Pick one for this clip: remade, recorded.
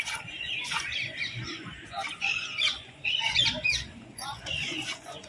remade